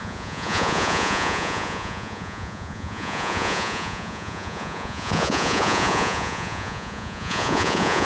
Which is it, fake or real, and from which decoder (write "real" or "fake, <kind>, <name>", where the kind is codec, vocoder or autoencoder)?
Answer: fake, vocoder, Vocos